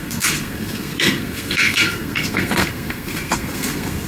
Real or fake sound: fake